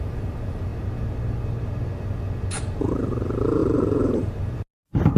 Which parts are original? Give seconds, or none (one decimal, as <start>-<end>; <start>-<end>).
0.7-2.8